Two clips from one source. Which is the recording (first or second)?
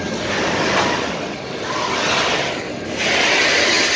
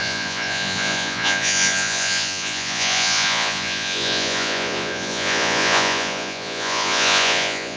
first